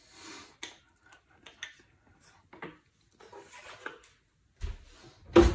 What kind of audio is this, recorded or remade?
recorded